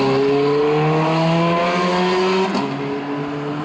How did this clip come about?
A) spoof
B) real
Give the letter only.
B